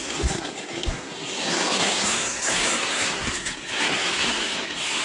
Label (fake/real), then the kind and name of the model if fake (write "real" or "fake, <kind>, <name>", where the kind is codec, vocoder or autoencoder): fake, codec, SNAC